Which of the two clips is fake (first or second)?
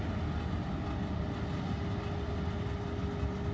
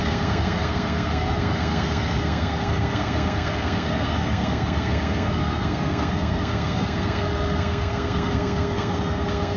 second